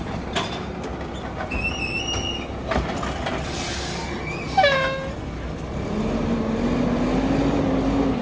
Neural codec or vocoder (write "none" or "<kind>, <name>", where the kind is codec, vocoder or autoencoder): none